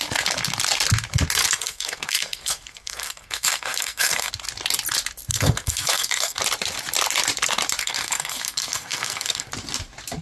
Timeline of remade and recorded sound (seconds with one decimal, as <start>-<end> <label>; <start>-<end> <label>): 0.0-1.4 recorded; 1.4-4.3 remade; 4.3-5.3 recorded; 5.3-6.4 remade; 6.4-7.8 recorded; 7.8-9.5 remade; 9.5-10.2 recorded